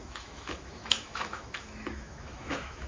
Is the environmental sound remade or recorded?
remade